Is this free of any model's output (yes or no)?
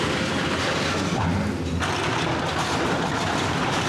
no